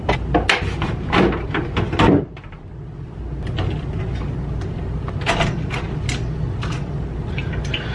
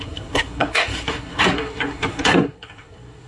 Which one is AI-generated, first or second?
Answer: second